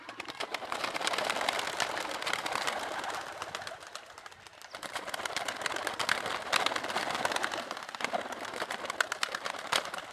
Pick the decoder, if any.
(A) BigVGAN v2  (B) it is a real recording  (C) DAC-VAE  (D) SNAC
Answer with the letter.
B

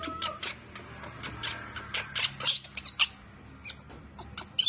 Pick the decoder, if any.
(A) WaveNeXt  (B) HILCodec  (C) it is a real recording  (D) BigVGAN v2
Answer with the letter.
C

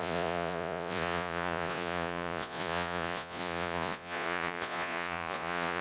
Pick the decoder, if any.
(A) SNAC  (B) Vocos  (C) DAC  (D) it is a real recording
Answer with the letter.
B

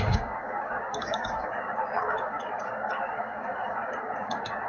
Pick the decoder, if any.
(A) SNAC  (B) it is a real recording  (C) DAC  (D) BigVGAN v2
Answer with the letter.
C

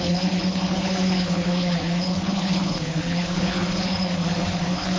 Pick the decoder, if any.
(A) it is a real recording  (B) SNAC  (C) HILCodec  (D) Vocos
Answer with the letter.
C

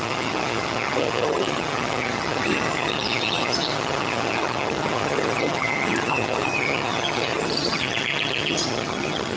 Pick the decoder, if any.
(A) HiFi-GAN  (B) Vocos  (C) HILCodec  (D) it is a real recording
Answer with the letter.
A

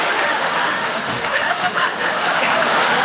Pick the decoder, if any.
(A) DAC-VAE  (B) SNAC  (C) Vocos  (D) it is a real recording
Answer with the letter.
A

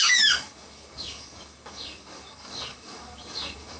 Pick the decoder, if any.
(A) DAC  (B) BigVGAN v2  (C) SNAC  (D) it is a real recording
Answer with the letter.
A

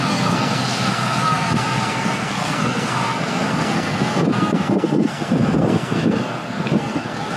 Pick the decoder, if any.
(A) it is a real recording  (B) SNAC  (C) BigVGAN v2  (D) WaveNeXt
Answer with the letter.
B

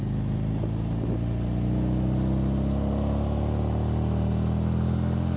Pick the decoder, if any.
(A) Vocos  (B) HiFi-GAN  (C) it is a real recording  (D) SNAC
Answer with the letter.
C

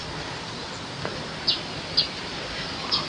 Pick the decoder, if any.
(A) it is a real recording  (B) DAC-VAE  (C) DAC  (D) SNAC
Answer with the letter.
A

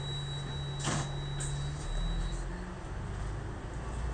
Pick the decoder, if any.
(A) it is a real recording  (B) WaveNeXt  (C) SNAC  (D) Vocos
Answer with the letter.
A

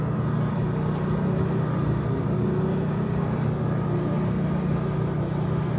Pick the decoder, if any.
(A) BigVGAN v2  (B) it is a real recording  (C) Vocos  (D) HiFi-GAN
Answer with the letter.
B